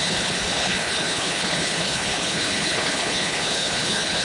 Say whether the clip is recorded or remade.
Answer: remade